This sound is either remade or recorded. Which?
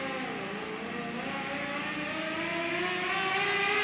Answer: recorded